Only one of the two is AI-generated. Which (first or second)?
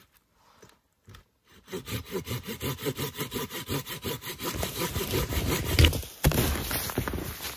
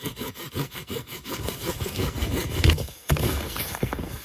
second